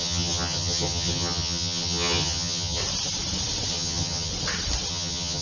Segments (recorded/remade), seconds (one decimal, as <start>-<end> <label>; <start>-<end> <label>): 0.0-2.8 remade; 2.8-3.7 recorded; 3.7-4.3 remade; 4.3-4.9 recorded; 4.9-5.4 remade